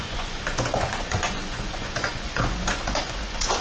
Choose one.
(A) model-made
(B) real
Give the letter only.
A